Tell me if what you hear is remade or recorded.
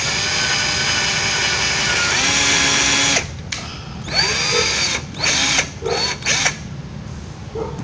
recorded